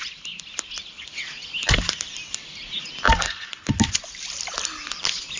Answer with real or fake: real